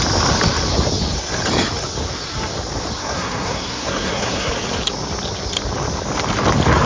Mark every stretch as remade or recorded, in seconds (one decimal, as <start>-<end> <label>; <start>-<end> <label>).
0.0-3.0 recorded; 3.0-4.5 remade; 4.5-6.9 recorded